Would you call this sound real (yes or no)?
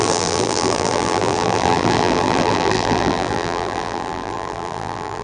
no